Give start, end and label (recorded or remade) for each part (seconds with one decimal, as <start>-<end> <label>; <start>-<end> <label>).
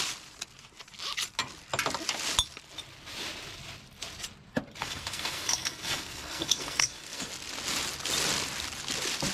0.0-4.8 recorded; 4.8-7.3 remade; 7.3-9.3 recorded